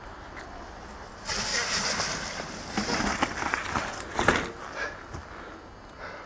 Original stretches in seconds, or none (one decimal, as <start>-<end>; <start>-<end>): 0.0-6.3